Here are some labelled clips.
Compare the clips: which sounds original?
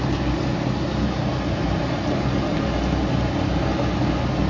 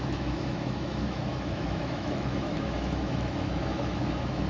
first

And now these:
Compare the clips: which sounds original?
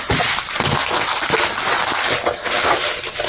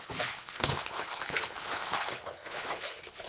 first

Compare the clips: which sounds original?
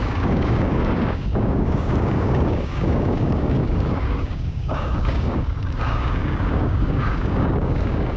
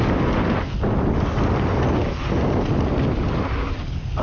second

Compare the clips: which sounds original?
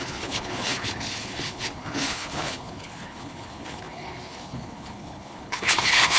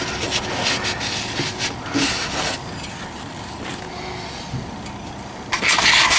second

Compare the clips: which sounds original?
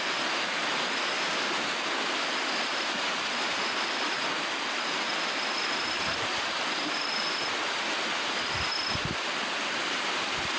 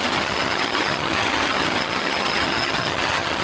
first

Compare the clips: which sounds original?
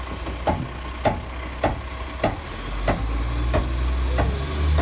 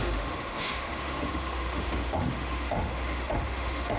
first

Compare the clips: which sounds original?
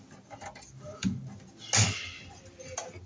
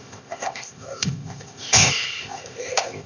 first